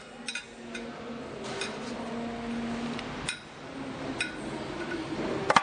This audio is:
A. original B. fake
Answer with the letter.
A